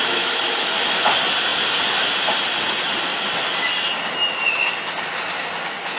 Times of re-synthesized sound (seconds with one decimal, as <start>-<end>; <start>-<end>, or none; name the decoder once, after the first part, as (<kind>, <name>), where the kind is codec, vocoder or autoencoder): 0.0-0.6 (autoencoder, DAC-VAE)